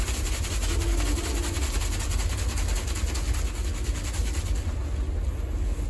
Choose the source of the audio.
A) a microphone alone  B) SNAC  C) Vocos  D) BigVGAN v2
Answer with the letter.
A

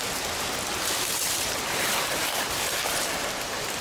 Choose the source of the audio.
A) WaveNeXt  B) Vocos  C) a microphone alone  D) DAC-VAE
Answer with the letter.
C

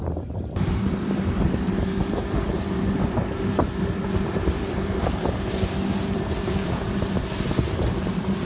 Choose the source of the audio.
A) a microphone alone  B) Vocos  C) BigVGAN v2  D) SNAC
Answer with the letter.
C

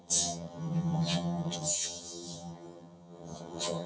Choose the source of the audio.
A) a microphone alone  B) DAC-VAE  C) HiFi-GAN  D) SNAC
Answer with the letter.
C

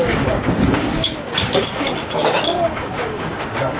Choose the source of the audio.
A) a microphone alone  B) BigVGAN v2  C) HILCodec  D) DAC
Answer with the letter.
D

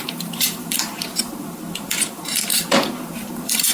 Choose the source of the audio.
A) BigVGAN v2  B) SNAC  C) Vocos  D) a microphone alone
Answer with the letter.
A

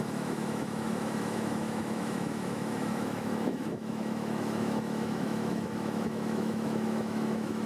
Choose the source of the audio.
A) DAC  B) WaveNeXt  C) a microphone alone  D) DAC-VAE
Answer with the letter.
D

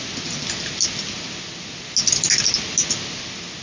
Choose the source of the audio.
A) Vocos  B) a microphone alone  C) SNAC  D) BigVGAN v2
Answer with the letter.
B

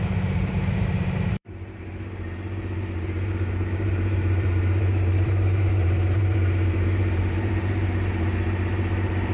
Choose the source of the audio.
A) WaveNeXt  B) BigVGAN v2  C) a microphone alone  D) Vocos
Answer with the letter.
B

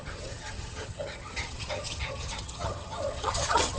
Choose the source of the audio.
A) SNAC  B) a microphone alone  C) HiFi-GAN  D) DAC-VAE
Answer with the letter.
C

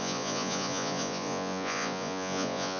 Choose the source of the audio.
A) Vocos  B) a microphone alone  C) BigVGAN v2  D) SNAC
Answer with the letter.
A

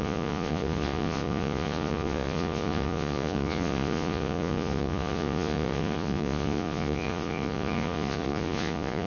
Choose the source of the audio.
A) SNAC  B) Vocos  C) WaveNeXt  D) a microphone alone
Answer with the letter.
B